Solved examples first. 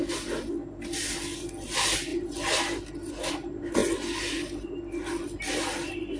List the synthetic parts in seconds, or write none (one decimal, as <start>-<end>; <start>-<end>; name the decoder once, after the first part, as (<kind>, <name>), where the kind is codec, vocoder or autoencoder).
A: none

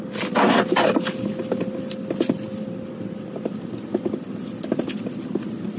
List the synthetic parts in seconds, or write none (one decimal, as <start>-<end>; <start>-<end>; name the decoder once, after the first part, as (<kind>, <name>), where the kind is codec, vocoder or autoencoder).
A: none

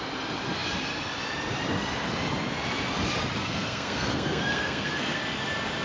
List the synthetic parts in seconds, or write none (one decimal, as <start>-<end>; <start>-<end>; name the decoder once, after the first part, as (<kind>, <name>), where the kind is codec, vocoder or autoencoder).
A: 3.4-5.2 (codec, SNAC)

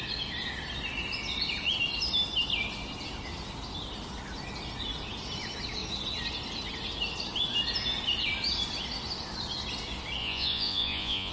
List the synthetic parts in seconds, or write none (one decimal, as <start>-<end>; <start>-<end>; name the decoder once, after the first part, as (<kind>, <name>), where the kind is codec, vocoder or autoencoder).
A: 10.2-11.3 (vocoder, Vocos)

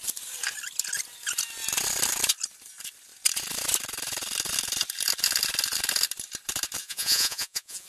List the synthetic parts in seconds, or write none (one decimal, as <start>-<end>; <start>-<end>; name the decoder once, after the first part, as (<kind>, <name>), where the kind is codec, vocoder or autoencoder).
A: 6.8-7.9 (vocoder, Vocos)

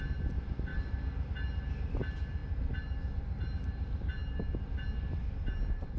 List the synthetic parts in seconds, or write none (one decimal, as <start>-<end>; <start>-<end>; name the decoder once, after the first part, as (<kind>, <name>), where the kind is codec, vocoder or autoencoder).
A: none

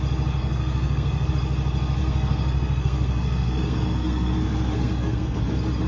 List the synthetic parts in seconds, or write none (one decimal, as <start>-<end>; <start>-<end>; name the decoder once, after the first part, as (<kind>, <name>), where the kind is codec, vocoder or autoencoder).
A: 0.4-1.3 (codec, SNAC); 2.0-5.4

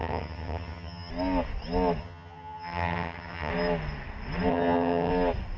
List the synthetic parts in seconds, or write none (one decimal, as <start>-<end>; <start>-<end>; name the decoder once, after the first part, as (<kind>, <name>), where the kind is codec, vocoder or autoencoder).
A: 0.0-1.1 (vocoder, HiFi-GAN); 2.0-3.5; 4.5-5.1